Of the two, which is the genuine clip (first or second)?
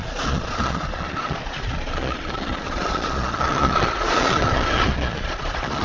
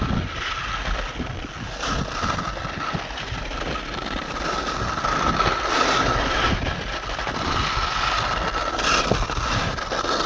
second